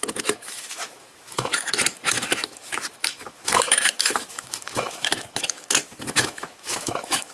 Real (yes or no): no